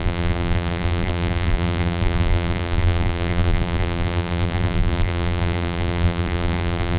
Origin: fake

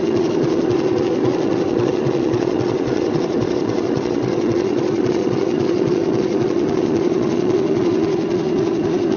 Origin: fake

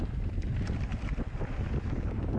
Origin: real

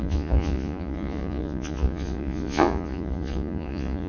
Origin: fake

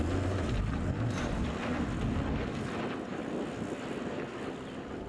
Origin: real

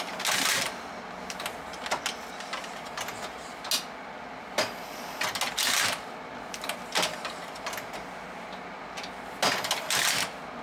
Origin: real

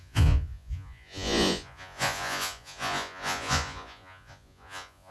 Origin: fake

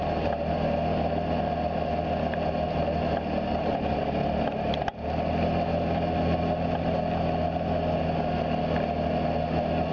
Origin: real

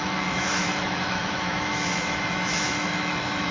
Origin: fake